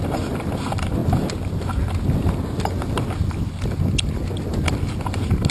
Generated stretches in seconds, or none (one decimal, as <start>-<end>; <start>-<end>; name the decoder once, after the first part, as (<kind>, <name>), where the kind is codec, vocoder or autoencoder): none

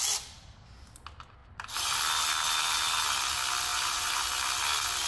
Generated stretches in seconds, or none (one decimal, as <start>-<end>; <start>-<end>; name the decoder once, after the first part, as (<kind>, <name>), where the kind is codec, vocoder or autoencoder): 1.4-2.0 (vocoder, BigVGAN v2); 3.7-4.2